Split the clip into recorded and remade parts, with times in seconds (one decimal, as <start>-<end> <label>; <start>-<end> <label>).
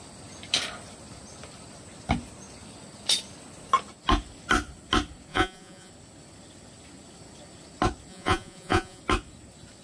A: 0.0-5.3 recorded; 5.3-5.9 remade; 5.9-8.1 recorded; 8.1-9.0 remade; 9.0-9.8 recorded